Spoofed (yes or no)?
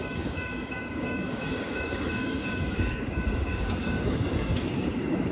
yes